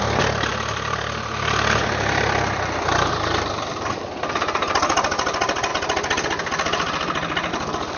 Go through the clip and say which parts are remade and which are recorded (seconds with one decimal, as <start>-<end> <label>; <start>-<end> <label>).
0.0-5.7 remade; 5.7-7.5 recorded; 7.5-8.0 remade